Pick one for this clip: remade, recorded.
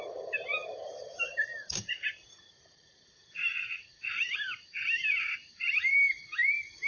remade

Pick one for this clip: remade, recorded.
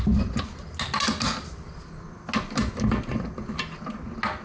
recorded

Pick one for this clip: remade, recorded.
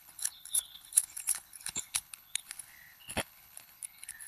remade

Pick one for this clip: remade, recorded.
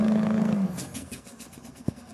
remade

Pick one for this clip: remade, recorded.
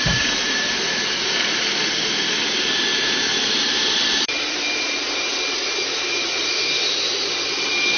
remade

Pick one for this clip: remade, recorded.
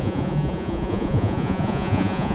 remade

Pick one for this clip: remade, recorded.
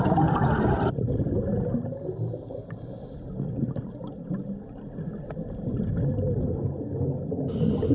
recorded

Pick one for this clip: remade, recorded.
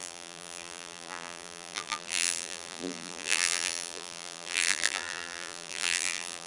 remade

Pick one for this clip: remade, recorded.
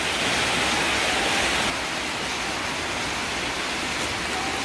recorded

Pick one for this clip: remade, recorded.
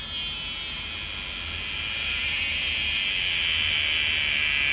recorded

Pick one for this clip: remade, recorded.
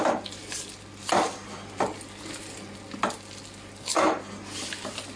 recorded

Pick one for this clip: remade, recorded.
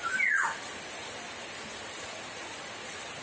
recorded